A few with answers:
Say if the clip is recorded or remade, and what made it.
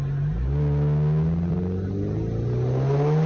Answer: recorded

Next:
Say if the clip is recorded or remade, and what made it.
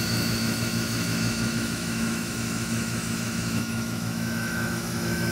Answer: remade, autoencoder, DAC-VAE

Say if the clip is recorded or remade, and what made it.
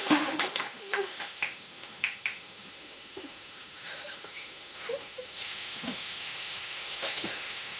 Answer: remade, autoencoder, DAC-VAE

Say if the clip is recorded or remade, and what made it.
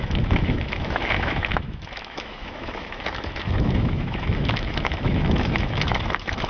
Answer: remade, autoencoder, DAC-VAE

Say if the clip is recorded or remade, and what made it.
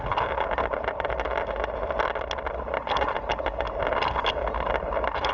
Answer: recorded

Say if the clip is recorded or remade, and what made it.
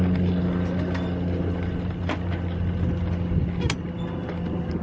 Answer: recorded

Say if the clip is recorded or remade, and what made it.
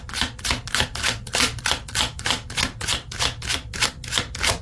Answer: recorded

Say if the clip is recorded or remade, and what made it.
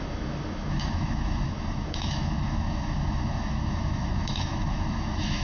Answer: remade, autoencoder, DAC-VAE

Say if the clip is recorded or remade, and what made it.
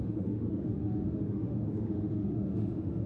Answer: remade, autoencoder, DAC-VAE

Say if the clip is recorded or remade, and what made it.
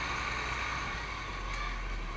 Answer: recorded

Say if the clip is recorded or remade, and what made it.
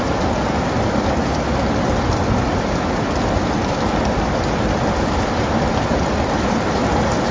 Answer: recorded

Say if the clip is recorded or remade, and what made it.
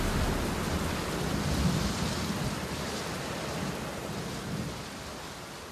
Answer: recorded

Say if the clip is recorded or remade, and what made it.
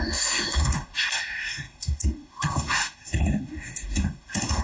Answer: remade, autoencoder, DAC-VAE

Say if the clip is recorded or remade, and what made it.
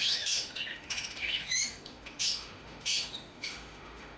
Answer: remade, autoencoder, DAC-VAE